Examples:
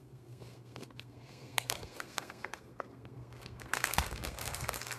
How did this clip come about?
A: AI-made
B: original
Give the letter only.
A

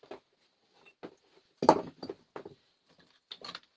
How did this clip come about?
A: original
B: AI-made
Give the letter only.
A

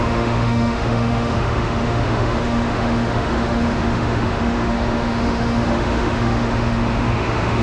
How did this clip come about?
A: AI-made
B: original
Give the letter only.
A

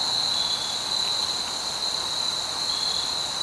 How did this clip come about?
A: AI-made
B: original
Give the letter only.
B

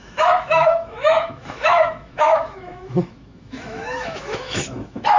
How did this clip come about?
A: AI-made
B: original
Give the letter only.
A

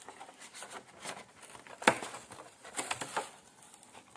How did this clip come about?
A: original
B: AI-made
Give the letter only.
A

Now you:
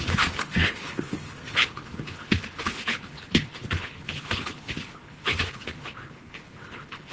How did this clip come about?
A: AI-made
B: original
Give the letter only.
A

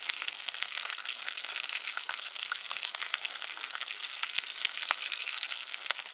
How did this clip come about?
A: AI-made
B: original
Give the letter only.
A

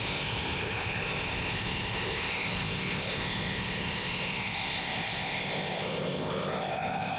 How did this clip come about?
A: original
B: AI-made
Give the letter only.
B